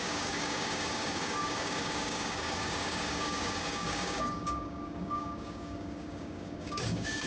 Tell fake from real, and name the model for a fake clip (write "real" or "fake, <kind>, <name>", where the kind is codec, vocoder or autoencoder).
fake, codec, DAC